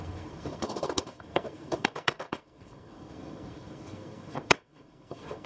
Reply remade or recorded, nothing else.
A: remade